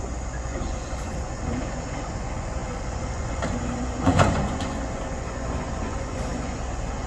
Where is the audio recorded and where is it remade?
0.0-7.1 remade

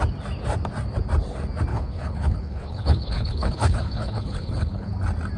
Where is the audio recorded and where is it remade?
0.0-1.7 recorded; 1.7-4.9 remade; 4.9-5.4 recorded